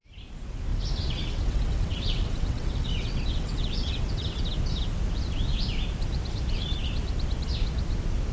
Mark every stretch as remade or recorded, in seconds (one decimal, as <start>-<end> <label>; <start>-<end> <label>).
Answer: 0.0-0.7 recorded; 0.7-4.4 remade; 4.4-8.3 recorded